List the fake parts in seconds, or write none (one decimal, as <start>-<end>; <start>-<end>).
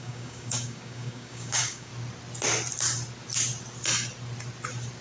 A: 0.0-1.9